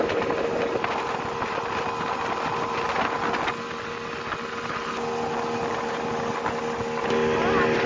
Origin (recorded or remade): recorded